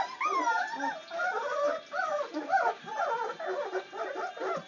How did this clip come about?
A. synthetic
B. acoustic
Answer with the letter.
B